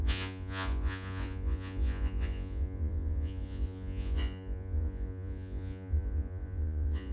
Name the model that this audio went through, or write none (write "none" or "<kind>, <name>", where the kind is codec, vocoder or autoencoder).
vocoder, Vocos